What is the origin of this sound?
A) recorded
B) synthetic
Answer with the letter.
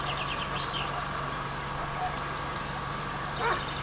A